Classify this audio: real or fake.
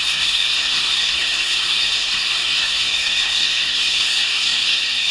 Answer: fake